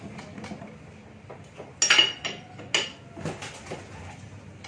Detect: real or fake real